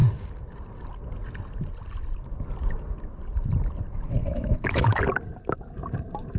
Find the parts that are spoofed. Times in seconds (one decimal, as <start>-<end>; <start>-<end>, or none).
4.2-5.0